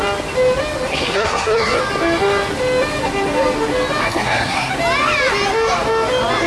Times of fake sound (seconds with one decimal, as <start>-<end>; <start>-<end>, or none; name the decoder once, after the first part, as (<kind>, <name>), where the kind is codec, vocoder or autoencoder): 0.9-1.8 (codec, SNAC); 4.0-4.7